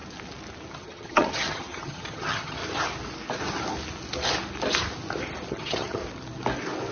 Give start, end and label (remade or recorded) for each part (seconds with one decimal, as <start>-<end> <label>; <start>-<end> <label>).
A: 0.0-0.7 recorded; 0.7-2.6 remade; 2.6-5.5 recorded; 5.5-6.0 remade; 6.0-6.9 recorded